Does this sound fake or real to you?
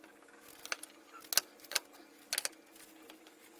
real